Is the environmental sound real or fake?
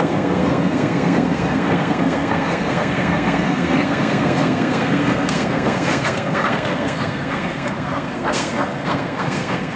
fake